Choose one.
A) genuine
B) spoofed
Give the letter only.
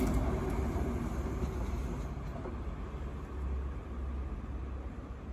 A